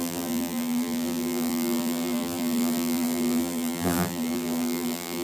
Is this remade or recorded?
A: remade